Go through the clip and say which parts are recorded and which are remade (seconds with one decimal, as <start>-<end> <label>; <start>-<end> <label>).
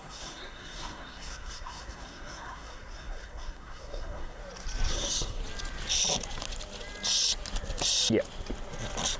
0.0-4.4 remade; 4.4-4.9 recorded; 4.9-5.4 remade; 5.4-9.2 recorded